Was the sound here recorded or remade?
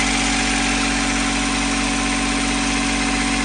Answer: recorded